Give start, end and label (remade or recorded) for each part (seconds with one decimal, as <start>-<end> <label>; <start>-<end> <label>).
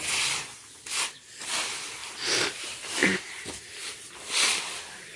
0.0-2.0 recorded; 2.0-2.6 remade; 2.6-3.0 recorded; 3.0-4.1 remade; 4.1-5.2 recorded